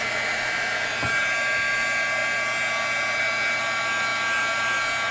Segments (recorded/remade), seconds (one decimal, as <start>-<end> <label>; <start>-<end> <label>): 0.0-5.1 recorded